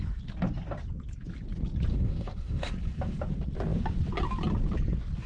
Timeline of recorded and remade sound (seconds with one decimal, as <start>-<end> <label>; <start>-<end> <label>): 0.0-1.9 recorded; 1.9-2.7 remade; 2.7-5.3 recorded